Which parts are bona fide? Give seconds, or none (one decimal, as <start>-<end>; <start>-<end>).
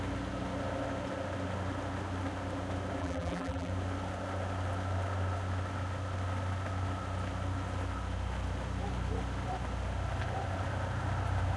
0.0-3.0; 3.7-11.6